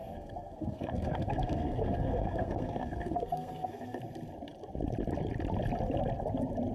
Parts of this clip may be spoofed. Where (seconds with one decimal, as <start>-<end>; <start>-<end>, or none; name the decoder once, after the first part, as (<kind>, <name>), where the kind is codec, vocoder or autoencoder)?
0.0-4.0 (codec, SNAC)